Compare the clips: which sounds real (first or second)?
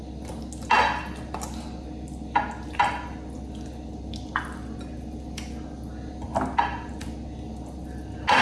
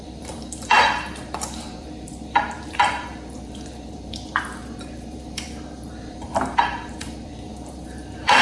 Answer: first